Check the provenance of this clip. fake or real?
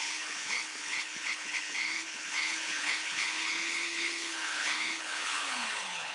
fake